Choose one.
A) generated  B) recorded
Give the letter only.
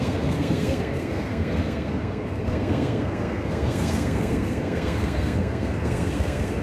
A